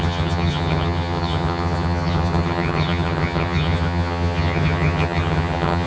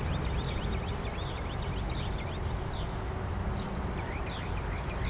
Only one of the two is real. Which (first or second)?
second